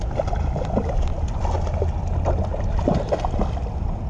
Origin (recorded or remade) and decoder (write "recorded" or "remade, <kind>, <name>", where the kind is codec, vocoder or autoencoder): recorded